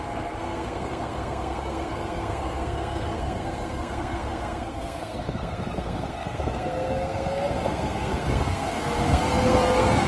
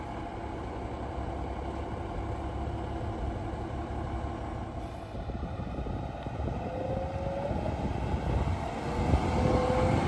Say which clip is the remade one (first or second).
first